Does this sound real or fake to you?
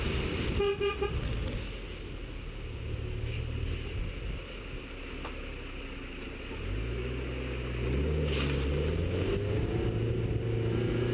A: real